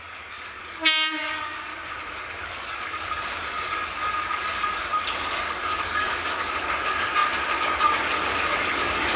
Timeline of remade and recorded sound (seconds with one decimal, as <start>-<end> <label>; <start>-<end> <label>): 0.0-1.7 remade; 1.7-2.4 recorded; 2.4-9.2 remade